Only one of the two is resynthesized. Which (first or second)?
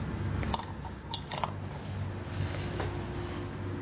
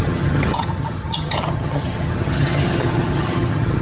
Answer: second